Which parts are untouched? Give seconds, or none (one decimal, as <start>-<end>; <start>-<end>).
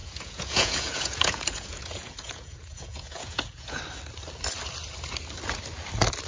3.8-6.3